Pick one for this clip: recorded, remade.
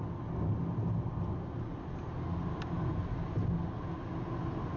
recorded